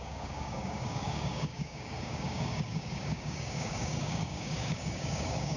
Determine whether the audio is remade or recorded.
remade